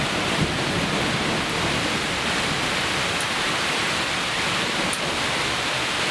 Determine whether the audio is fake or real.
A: fake